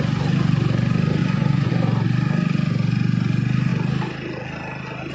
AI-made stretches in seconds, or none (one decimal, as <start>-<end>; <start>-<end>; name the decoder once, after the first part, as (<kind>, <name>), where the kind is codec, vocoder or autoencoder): 1.2-1.7 (vocoder, Vocos)